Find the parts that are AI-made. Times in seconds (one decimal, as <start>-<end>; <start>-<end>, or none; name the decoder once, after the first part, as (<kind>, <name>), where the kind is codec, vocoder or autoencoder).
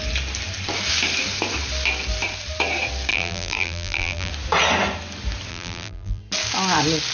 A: 3.1-4.3 (vocoder, BigVGAN v2); 5.5-6.2